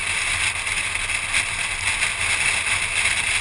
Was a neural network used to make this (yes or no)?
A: no